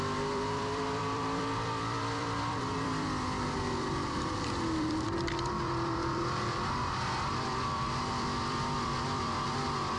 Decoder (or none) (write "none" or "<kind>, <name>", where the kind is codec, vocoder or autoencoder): vocoder, BigVGAN v2